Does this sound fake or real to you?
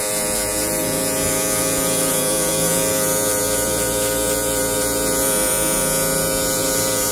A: fake